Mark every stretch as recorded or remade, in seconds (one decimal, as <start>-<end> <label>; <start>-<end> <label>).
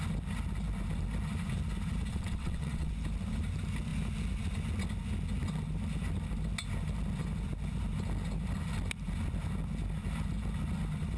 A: 0.0-2.1 recorded; 2.1-2.9 remade; 2.9-11.2 recorded